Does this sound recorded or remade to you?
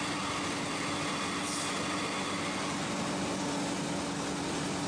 recorded